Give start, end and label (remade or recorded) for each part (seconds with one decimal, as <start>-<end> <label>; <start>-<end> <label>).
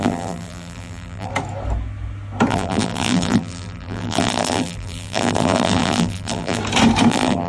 0.0-1.3 remade; 1.3-2.5 recorded; 2.5-6.6 remade; 6.6-7.1 recorded; 7.1-7.5 remade